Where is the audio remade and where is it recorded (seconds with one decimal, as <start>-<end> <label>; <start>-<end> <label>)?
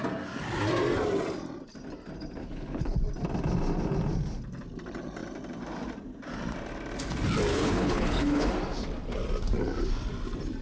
0.0-2.4 recorded; 2.4-3.0 remade; 3.0-7.5 recorded; 7.5-8.5 remade; 8.5-10.6 recorded